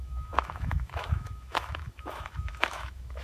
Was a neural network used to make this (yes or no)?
yes